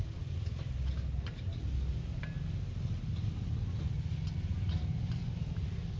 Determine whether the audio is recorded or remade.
recorded